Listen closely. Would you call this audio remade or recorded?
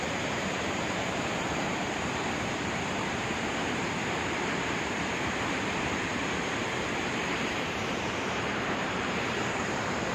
remade